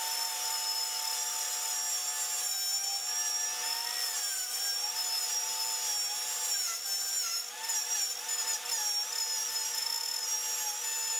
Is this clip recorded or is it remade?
recorded